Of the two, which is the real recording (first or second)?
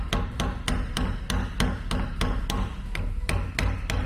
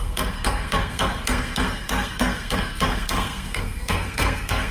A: first